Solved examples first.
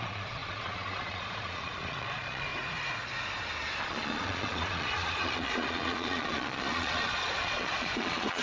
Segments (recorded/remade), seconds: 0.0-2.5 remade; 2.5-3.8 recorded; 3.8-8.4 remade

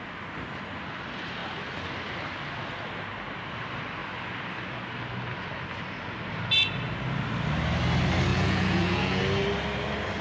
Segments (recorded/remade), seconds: 0.0-8.3 recorded; 8.3-9.2 remade; 9.2-10.2 recorded

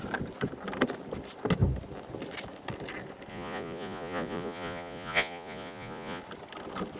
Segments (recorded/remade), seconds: 0.0-3.3 recorded; 3.3-6.2 remade; 6.2-7.0 recorded

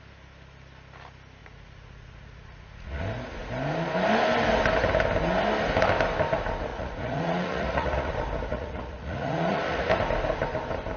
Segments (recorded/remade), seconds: 0.0-1.4 recorded; 1.4-3.0 remade; 3.0-6.7 recorded; 6.7-8.1 remade; 8.1-8.5 recorded; 8.5-9.9 remade; 9.9-11.0 recorded

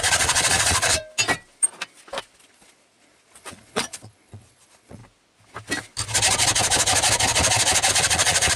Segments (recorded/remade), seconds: 0.0-1.0 remade; 1.0-2.4 recorded; 2.4-5.0 remade; 5.0-7.9 recorded; 7.9-8.6 remade